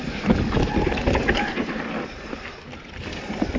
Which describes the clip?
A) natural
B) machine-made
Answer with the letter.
A